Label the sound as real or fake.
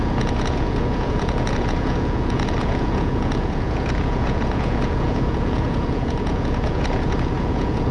fake